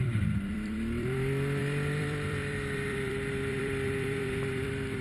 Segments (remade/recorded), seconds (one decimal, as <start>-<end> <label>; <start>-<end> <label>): 0.0-5.0 remade